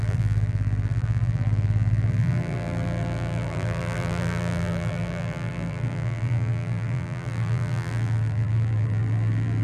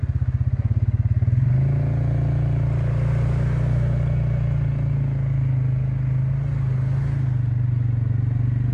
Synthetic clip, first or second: first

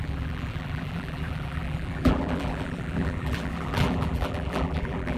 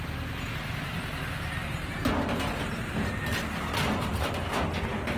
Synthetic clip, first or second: first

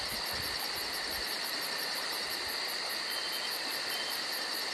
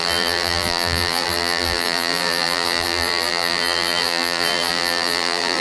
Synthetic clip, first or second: second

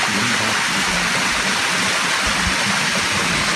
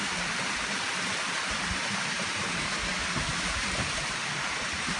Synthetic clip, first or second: second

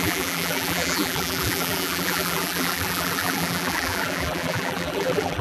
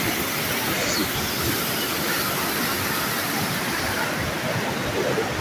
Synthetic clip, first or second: first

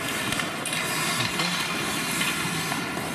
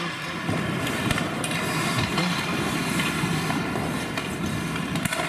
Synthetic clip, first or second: second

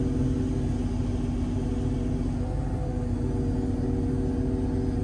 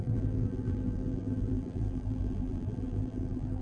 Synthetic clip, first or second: second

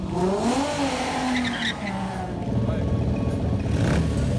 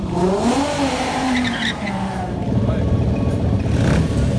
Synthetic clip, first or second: second